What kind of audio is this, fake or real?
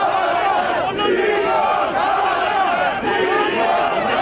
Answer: real